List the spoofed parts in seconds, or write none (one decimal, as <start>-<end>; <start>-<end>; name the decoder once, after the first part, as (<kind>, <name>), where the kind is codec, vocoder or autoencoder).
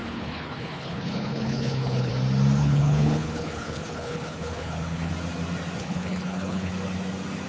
0.0-2.1 (codec, HILCodec); 2.6-5.1; 5.8-6.7